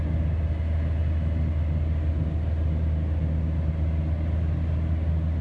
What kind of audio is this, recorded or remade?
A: recorded